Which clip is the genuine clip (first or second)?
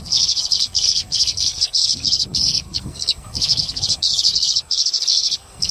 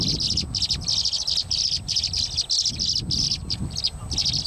second